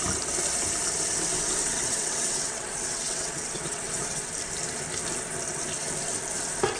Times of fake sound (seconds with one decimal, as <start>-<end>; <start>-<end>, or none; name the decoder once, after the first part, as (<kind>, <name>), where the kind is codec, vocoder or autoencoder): 1.6-4.3 (vocoder, WaveNeXt)